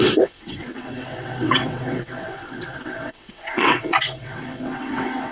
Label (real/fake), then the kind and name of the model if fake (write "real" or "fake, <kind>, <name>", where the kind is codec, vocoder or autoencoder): fake, vocoder, WaveNeXt